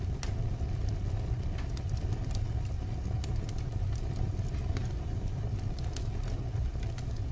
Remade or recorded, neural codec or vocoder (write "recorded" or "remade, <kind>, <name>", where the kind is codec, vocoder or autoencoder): recorded